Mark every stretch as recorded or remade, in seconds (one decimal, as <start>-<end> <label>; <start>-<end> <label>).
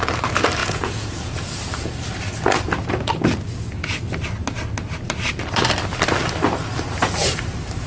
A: 0.0-0.6 recorded; 0.6-1.5 remade; 1.5-7.9 recorded